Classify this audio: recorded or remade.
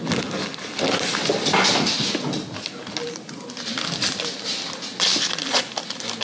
recorded